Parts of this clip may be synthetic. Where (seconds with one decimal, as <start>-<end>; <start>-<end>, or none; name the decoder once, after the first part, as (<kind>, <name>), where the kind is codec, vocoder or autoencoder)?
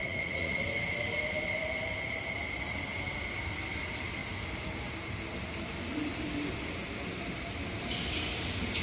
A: 0.0-0.6 (vocoder, Vocos)